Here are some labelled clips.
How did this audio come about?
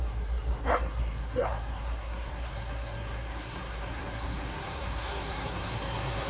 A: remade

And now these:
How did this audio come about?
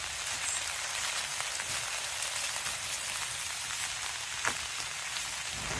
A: recorded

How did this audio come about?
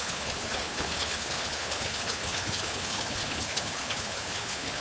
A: remade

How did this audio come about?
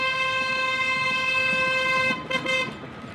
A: recorded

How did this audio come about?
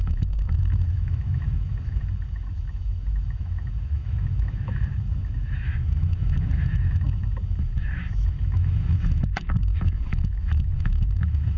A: remade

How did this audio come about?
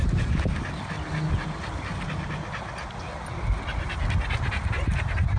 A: recorded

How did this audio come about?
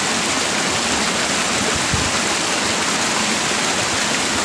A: recorded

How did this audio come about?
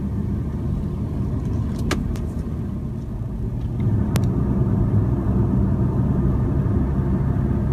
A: recorded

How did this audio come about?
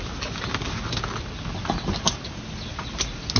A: recorded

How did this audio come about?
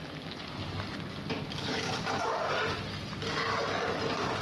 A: recorded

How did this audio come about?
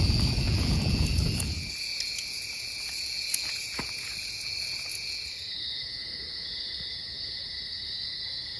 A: remade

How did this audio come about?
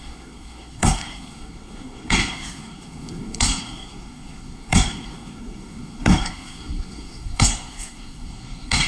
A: remade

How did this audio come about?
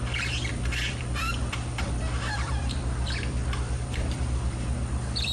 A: remade